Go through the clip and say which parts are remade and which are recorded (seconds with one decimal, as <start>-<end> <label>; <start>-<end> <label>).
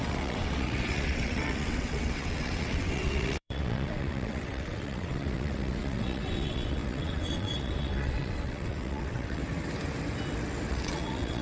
0.0-9.4 remade; 9.4-10.7 recorded; 10.7-11.4 remade